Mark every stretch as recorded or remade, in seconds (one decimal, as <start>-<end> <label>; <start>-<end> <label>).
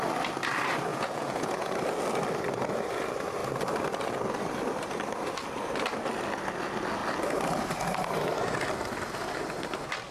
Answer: 0.0-0.9 recorded; 0.9-1.7 remade; 1.7-10.1 recorded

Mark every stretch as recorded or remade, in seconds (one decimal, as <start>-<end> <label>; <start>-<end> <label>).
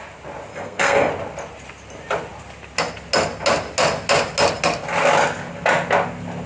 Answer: 0.0-0.5 recorded; 0.5-1.1 remade; 1.1-6.5 recorded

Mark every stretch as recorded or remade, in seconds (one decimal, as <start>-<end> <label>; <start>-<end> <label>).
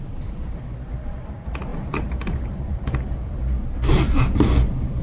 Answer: 0.0-1.7 recorded; 1.7-3.4 remade; 3.4-5.0 recorded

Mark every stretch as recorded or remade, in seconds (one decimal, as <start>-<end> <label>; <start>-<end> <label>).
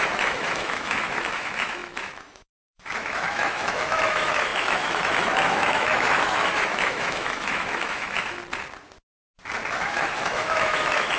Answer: 0.0-8.4 remade; 8.4-9.7 recorded; 9.7-11.2 remade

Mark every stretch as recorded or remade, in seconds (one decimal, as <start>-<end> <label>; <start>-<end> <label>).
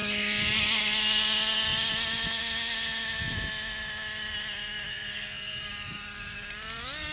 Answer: 0.0-4.9 recorded; 4.9-5.7 remade; 5.7-7.1 recorded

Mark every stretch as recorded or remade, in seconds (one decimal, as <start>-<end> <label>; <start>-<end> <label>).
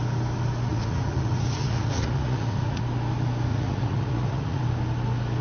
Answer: 0.0-0.7 recorded; 0.7-2.8 remade; 2.8-3.5 recorded; 3.5-4.6 remade; 4.6-5.4 recorded